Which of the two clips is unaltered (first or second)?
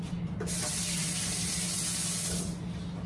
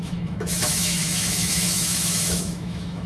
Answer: first